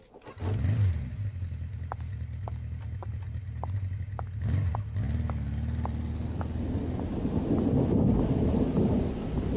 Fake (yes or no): no